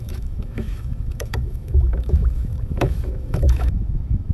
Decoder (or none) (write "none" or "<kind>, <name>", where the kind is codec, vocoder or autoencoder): autoencoder, DAC-VAE